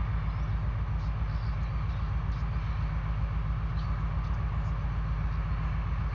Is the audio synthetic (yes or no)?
no